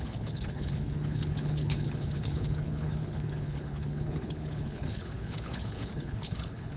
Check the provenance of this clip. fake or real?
fake